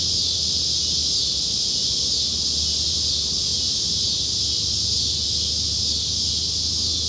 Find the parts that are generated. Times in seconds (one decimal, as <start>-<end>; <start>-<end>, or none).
none